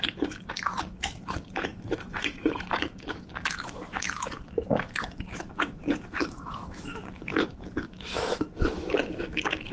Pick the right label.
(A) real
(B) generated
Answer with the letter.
B